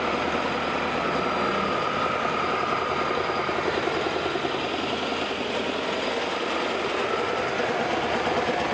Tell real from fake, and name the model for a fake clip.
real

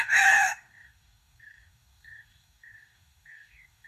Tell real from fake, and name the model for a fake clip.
fake, codec, DAC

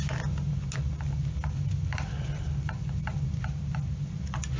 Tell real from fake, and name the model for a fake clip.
real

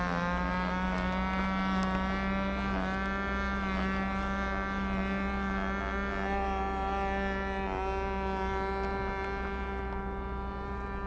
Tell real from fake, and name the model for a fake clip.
real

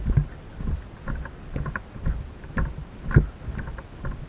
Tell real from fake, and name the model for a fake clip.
real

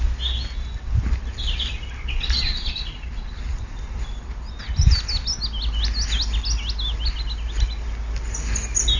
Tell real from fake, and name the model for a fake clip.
real